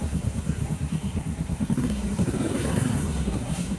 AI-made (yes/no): yes